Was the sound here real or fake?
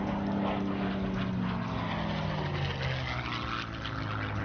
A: real